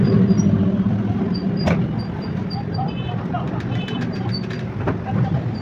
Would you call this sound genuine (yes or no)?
yes